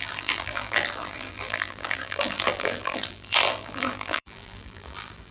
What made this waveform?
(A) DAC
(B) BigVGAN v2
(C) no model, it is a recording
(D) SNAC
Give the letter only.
B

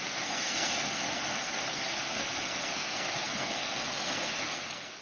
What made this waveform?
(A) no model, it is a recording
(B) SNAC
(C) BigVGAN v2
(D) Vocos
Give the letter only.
B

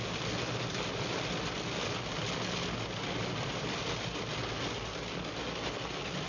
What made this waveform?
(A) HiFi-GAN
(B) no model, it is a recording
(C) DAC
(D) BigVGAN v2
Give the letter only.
B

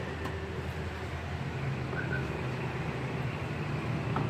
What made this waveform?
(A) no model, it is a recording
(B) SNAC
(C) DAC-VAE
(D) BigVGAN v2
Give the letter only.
A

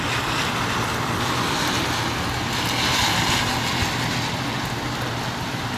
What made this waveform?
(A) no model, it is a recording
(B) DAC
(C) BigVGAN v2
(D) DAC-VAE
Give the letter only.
A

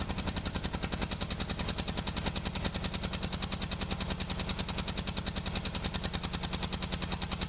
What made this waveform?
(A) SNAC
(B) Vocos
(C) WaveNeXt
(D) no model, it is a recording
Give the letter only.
D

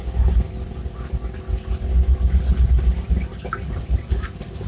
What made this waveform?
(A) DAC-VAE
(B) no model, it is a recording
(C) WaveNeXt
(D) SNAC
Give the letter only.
B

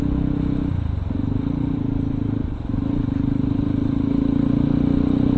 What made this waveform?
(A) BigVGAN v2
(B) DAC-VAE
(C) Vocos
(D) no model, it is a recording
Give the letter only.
D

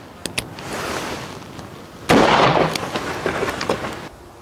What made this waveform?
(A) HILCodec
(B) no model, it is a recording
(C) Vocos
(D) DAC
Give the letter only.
B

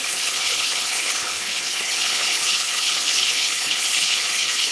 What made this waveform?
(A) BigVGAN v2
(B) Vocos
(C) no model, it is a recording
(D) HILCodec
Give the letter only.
D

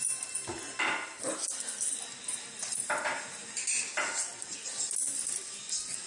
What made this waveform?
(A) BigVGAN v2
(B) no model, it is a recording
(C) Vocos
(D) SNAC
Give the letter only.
B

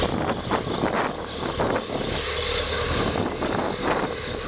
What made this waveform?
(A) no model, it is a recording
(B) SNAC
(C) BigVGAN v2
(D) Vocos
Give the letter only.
A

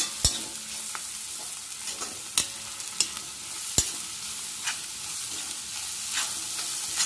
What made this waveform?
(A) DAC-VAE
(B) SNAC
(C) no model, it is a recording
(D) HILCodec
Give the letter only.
C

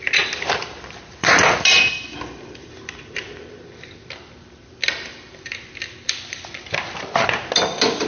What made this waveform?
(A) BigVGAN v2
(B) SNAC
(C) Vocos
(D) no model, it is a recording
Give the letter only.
A